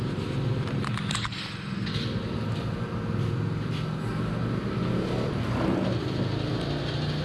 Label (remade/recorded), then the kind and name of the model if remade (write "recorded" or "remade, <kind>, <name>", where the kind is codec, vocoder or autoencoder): recorded